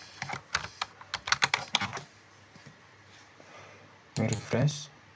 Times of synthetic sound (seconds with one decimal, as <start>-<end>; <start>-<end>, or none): none